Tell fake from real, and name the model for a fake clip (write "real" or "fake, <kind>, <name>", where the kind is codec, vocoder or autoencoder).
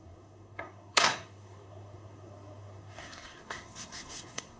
fake, codec, SNAC